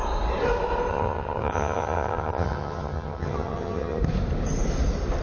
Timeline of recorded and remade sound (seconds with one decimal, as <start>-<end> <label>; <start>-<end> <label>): 0.0-0.9 recorded; 0.9-4.0 remade; 4.0-5.2 recorded

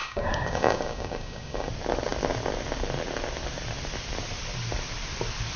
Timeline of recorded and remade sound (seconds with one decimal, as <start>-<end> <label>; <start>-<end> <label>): 0.0-1.7 remade; 1.7-5.6 recorded

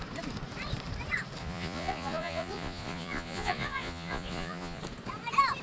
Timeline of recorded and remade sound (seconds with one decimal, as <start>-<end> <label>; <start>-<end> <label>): 0.0-1.4 recorded; 1.4-4.8 remade; 4.8-5.6 recorded

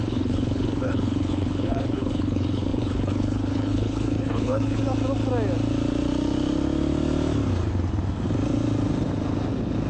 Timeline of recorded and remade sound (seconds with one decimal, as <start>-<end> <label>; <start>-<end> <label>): 0.0-4.8 remade; 4.8-9.9 recorded